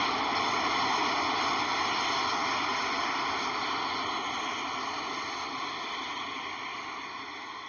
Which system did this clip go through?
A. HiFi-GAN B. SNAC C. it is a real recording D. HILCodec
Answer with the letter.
C